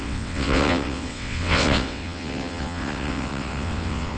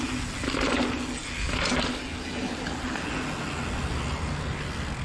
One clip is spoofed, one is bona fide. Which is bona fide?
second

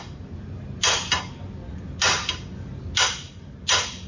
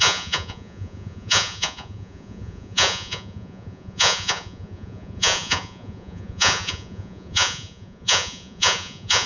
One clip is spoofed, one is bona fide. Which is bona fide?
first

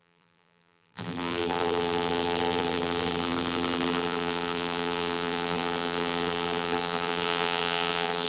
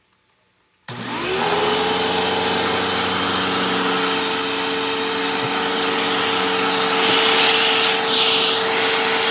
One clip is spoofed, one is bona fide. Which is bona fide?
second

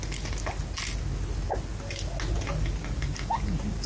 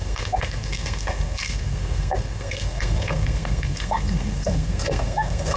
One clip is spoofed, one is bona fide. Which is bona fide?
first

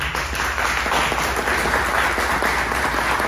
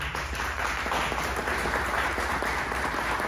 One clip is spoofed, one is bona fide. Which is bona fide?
first